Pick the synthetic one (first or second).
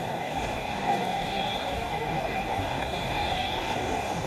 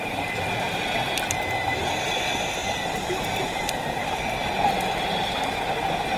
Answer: first